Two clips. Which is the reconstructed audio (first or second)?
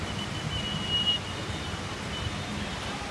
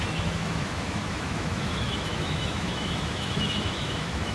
second